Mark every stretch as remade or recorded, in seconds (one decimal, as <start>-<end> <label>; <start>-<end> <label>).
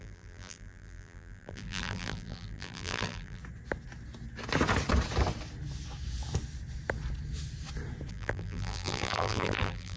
0.0-3.4 remade; 3.4-8.1 recorded; 8.1-10.0 remade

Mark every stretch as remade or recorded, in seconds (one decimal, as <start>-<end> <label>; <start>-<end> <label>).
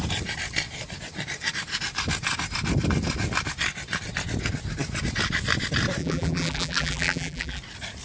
0.0-6.0 recorded; 6.0-7.6 remade; 7.6-8.0 recorded